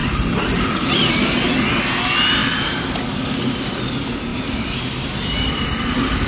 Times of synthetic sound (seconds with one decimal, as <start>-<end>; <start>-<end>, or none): none